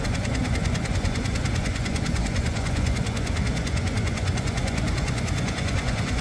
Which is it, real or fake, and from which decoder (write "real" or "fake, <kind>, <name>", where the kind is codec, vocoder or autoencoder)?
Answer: fake, vocoder, Vocos